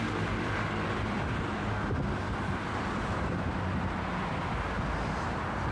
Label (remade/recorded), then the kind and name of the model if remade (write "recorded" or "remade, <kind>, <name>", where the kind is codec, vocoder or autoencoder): remade, vocoder, BigVGAN v2